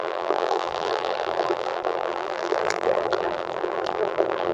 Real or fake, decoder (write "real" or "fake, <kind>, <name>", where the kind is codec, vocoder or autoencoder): fake, vocoder, BigVGAN v2